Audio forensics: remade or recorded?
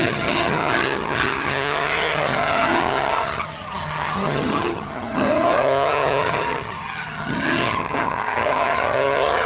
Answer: remade